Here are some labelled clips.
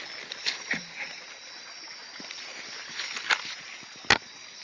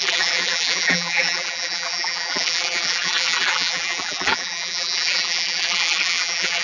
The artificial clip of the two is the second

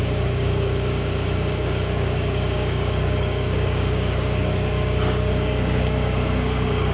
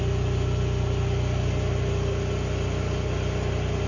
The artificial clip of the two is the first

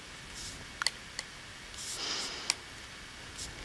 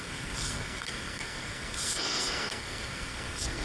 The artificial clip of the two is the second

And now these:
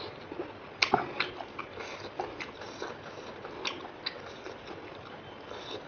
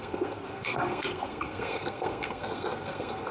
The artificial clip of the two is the second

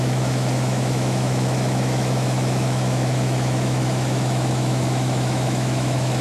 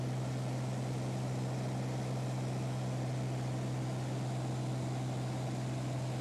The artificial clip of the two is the first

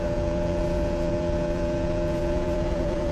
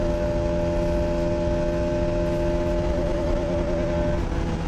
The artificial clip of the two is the first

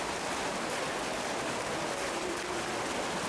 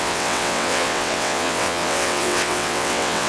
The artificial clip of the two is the second